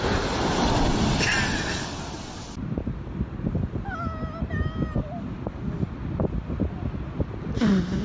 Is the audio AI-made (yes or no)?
no